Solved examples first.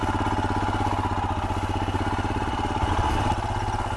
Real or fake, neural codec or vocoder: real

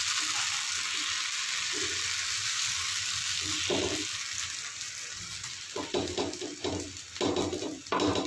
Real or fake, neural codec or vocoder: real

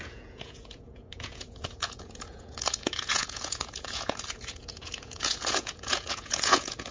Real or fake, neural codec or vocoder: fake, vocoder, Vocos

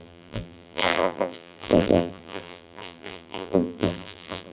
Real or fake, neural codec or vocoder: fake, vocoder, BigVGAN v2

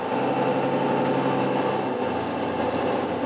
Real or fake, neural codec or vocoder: real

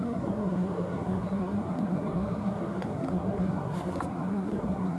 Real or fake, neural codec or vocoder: fake, codec, SNAC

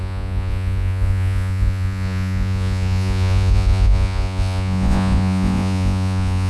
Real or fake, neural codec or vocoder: fake, vocoder, Vocos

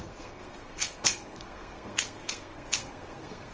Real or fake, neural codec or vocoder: fake, codec, SNAC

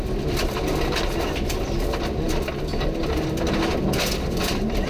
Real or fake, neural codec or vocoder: real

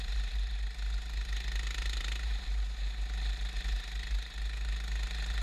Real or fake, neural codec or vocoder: real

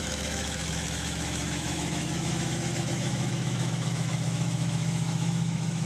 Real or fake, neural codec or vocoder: fake, autoencoder, DAC-VAE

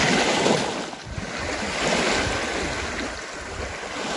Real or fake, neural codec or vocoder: real